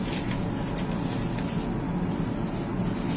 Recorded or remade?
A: recorded